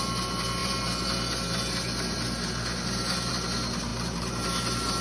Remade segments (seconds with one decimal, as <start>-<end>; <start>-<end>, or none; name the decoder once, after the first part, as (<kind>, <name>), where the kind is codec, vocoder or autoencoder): none